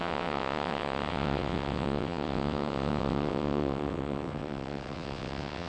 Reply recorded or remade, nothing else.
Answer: remade